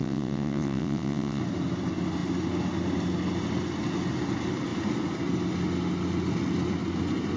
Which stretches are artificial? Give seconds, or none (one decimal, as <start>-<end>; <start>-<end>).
0.0-1.4